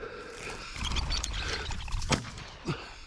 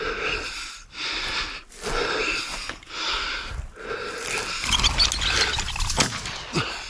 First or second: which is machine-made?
first